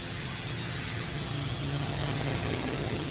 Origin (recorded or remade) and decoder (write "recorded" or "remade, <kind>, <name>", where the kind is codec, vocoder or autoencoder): remade, vocoder, HiFi-GAN